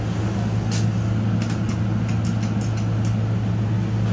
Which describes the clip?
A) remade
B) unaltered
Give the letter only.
B